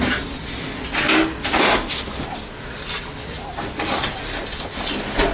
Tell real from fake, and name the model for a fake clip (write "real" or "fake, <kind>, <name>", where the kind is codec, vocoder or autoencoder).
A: real